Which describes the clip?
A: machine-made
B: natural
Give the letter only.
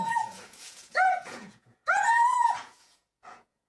A